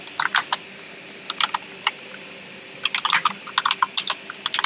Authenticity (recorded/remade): recorded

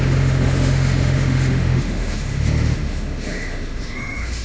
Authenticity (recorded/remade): remade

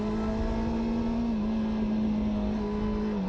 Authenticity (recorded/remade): recorded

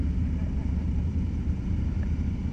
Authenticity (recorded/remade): remade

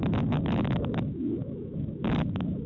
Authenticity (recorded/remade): remade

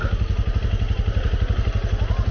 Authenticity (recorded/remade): recorded